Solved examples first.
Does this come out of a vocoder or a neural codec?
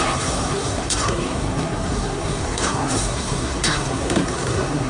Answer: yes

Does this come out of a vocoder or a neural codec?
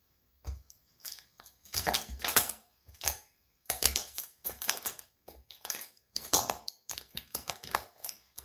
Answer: yes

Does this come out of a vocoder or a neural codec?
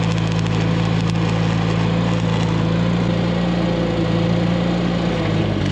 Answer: no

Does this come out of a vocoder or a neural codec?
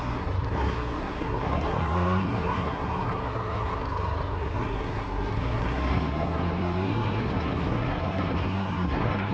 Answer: yes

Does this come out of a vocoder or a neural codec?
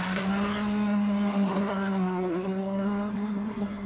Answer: yes